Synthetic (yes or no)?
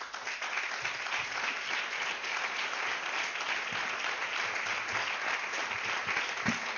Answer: no